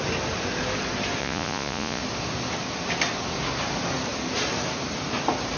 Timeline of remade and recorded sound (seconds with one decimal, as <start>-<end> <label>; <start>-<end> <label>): 0.0-1.2 recorded; 1.2-2.0 remade; 2.0-5.6 recorded